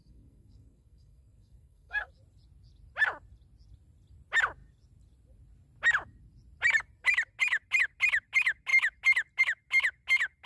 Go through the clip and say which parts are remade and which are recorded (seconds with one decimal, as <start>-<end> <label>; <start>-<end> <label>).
0.0-2.1 remade; 2.1-10.5 recorded